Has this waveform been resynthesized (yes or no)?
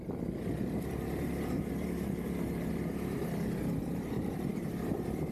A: no